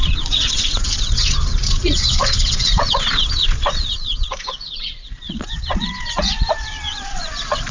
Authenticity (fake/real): fake